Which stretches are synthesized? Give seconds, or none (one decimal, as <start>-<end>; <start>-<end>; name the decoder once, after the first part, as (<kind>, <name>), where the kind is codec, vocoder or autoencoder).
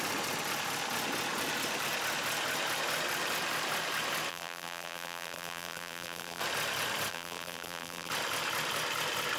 4.3-6.4 (vocoder, BigVGAN v2); 7.1-8.1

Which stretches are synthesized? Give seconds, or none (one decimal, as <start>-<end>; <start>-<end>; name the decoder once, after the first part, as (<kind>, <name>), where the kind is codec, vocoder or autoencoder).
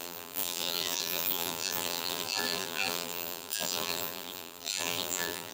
0.0-5.5 (vocoder, BigVGAN v2)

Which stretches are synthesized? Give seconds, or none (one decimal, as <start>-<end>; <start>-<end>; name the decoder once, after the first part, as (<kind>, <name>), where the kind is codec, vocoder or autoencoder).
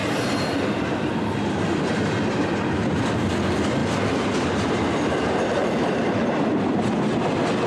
3.8-4.8 (vocoder, BigVGAN v2); 5.6-6.6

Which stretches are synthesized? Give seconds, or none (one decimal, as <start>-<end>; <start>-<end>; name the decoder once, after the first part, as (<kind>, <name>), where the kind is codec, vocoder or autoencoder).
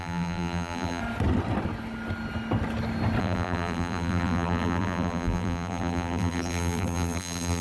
0.0-1.0 (vocoder, BigVGAN v2); 3.2-7.6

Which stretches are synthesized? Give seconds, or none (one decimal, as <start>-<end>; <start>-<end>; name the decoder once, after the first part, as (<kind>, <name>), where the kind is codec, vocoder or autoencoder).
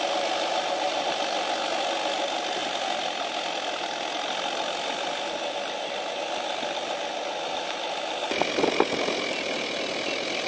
none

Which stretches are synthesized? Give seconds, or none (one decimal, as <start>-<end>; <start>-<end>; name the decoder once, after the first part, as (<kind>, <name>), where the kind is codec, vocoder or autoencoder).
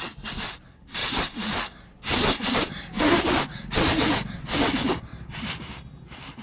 1.0-3.3 (vocoder, BigVGAN v2); 5.1-5.7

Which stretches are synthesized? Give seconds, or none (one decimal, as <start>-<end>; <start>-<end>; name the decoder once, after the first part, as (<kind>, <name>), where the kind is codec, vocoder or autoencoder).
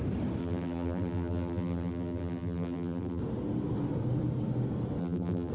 0.4-3.2 (vocoder, BigVGAN v2); 5.0-5.5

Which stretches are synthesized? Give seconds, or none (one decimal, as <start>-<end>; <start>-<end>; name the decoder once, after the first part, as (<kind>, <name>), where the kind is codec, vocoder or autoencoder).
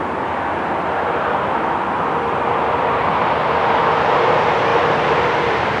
4.7-5.2 (vocoder, BigVGAN v2)